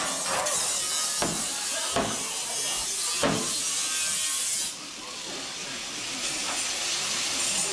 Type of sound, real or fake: real